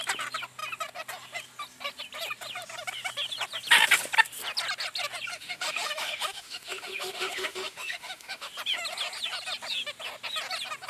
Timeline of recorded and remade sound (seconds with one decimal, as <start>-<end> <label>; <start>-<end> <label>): 0.0-5.3 recorded; 5.3-8.5 remade; 8.5-10.9 recorded